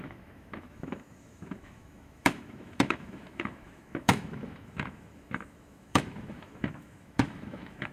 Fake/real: fake